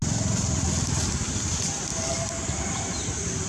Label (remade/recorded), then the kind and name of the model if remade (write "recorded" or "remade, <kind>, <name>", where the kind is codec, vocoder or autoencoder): recorded